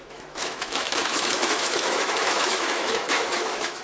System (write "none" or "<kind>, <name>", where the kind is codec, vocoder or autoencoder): autoencoder, DAC-VAE